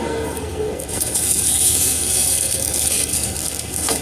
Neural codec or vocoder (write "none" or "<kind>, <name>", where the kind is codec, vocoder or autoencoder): codec, SNAC